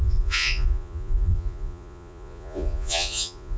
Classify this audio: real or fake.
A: fake